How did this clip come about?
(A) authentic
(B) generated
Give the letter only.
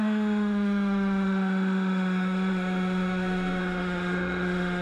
B